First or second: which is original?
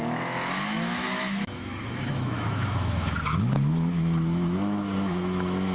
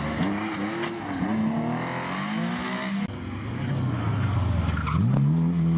second